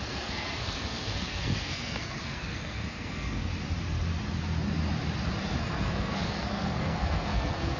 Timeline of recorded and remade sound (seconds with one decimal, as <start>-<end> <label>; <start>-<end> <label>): 0.0-3.5 remade; 3.5-5.6 recorded; 5.6-7.8 remade